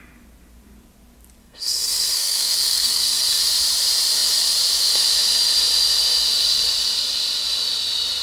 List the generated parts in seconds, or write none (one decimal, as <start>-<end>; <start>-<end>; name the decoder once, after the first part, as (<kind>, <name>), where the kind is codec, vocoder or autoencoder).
1.4-3.4 (codec, SNAC)